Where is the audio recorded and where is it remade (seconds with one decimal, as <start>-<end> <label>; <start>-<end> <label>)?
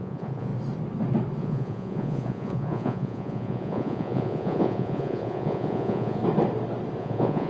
0.0-0.5 remade; 0.5-1.4 recorded; 1.4-6.2 remade; 6.2-7.0 recorded; 7.0-7.5 remade